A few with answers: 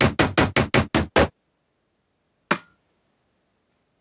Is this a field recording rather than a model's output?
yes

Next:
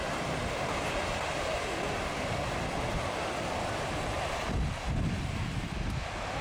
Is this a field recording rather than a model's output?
yes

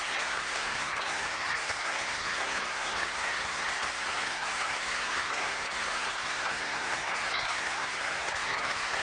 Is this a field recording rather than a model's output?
no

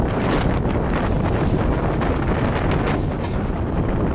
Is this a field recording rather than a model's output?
yes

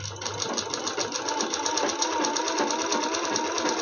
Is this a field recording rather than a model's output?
yes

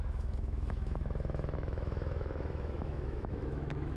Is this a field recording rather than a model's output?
no